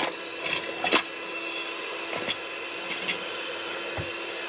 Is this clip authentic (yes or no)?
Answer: yes